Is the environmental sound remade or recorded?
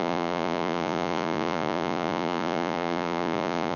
remade